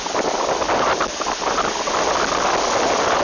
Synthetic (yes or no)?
no